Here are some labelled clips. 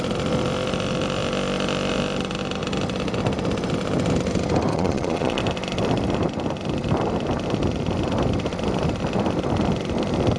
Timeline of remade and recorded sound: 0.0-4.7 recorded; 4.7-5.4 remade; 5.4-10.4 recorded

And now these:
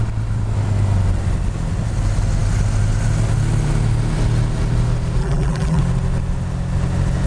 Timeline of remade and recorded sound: 0.0-5.2 recorded; 5.2-5.8 remade; 5.8-7.3 recorded